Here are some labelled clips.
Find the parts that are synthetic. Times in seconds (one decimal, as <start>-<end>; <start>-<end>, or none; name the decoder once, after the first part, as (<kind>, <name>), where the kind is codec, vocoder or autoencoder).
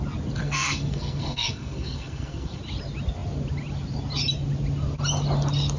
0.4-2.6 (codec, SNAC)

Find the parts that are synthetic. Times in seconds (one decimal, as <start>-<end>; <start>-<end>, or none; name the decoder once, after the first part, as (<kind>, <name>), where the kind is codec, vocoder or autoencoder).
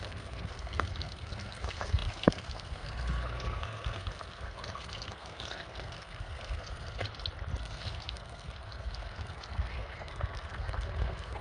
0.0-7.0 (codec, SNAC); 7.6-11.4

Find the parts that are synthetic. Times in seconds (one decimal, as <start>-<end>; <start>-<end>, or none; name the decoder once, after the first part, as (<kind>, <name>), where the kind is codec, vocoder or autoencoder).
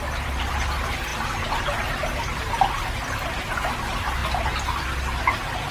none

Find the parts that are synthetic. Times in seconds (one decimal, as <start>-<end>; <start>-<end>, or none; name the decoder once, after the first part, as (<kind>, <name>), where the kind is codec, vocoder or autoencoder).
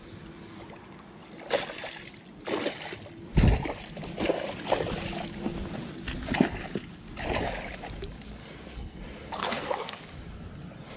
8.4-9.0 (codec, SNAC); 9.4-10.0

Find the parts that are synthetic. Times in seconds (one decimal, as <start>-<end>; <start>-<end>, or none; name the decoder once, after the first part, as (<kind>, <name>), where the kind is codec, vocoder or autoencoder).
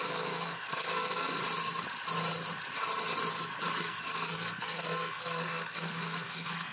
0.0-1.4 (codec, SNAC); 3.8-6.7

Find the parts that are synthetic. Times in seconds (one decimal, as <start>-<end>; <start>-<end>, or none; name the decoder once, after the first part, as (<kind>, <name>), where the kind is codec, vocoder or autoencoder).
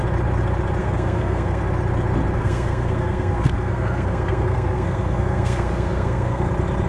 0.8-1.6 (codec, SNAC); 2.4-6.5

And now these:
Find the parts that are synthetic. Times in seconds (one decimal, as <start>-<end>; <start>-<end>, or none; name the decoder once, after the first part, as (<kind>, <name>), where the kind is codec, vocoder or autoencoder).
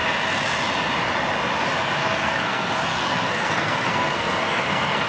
2.0-5.1 (codec, SNAC)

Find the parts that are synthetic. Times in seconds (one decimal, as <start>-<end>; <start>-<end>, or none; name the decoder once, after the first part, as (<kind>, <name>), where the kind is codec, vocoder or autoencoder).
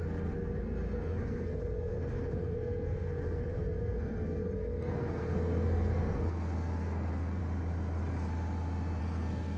0.0-7.4 (codec, SNAC); 9.0-9.6